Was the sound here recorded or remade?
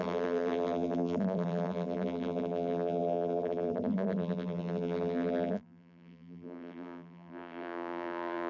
remade